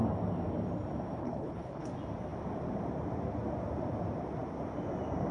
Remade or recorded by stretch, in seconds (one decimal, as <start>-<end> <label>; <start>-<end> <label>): 0.0-1.2 recorded; 1.2-1.9 remade; 1.9-5.3 recorded